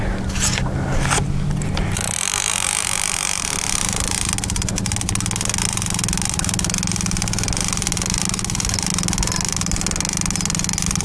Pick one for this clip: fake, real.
real